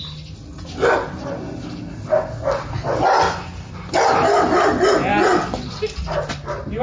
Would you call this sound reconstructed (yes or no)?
no